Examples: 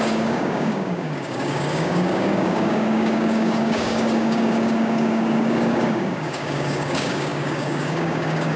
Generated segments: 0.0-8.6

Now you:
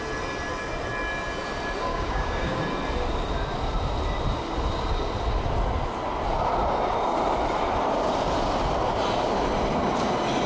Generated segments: 1.9-2.6

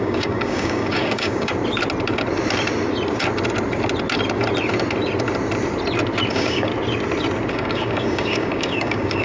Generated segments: 0.0-1.5; 6.3-6.7; 7.5-9.2

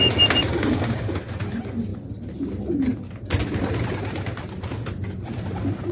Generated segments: 0.4-1.2

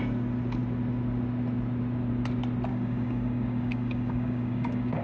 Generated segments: 2.7-5.0

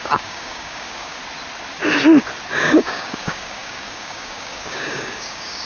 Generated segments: 0.0-1.2; 2.6-5.7